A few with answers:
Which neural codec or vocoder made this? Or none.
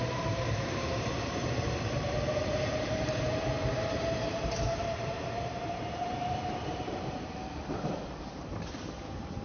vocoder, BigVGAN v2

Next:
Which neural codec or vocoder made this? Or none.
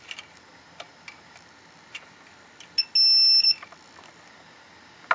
none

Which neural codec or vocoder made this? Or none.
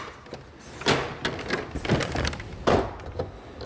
none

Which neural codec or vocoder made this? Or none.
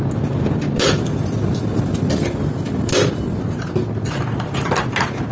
none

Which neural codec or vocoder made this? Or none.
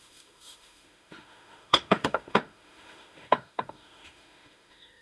autoencoder, DAC-VAE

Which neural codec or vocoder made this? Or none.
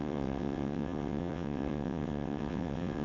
vocoder, WaveNeXt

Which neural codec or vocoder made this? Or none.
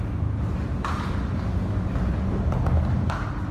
none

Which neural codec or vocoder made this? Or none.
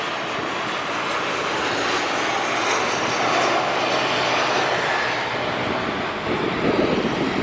none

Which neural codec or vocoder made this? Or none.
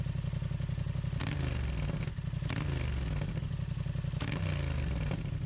none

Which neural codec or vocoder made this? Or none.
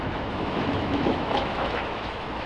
autoencoder, DAC-VAE